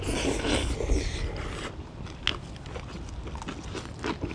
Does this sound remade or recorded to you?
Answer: recorded